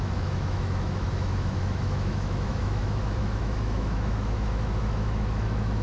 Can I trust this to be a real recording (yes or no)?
no